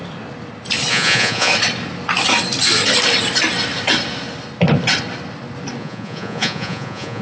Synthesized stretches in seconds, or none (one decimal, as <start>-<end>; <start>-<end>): 0.9-1.5; 5.8-7.2